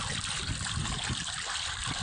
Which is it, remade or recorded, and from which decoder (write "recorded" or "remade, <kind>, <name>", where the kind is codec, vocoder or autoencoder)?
recorded